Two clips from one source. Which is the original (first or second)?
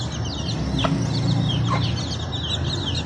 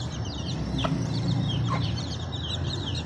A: first